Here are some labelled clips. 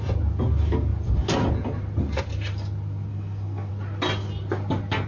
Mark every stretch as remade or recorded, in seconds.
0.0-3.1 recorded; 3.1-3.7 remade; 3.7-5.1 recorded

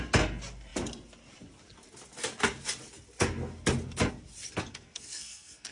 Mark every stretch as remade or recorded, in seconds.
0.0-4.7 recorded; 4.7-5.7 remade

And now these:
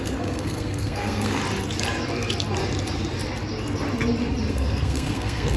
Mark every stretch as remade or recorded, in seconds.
0.0-1.4 remade; 1.4-4.5 recorded; 4.5-5.6 remade